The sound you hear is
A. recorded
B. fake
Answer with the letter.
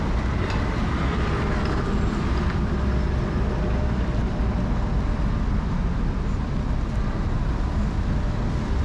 A